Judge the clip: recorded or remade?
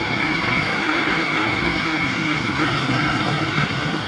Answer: remade